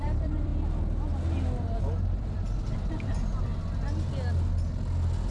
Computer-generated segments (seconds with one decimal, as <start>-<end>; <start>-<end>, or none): 0.0-0.5; 1.8-3.5